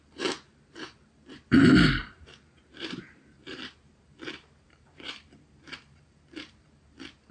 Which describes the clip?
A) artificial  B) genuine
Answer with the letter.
A